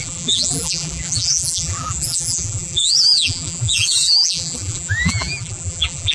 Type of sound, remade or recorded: remade